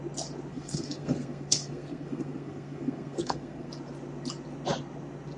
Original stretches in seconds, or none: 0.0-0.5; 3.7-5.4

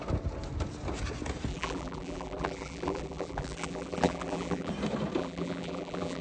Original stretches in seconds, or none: 0.0-1.5; 4.7-5.2

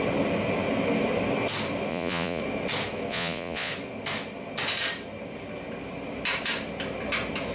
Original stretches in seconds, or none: 0.0-1.9; 2.4-3.1; 3.7-7.5